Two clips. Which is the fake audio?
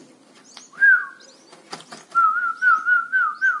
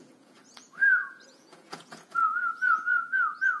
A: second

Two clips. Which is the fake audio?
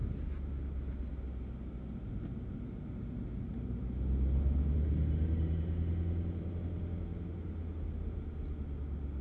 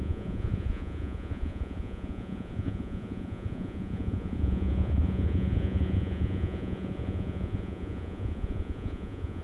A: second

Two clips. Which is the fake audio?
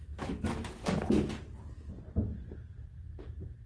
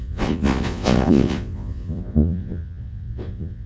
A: second